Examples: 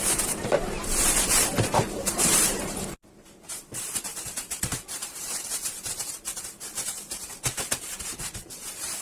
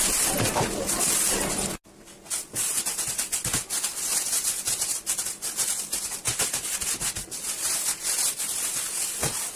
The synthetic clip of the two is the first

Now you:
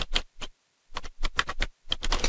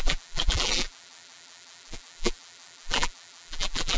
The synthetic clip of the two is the second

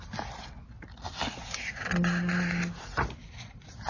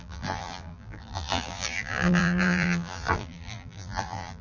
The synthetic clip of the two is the second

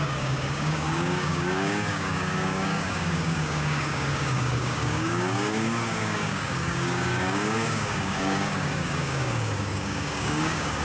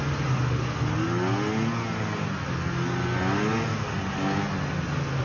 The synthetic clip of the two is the first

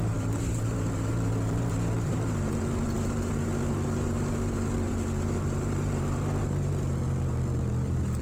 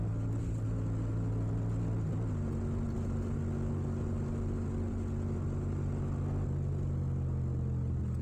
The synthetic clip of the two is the first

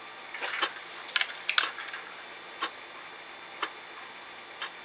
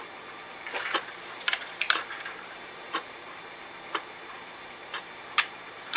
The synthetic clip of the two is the second